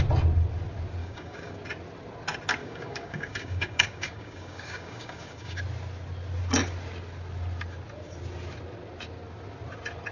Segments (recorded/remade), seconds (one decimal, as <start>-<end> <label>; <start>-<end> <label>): 0.0-1.0 recorded; 1.0-1.6 remade; 1.6-2.6 recorded; 2.6-5.6 remade; 5.6-10.1 recorded